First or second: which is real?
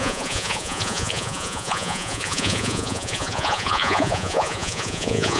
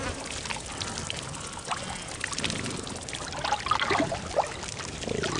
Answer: second